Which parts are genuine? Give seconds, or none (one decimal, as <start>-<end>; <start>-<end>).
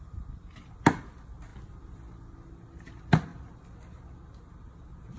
0.0-5.2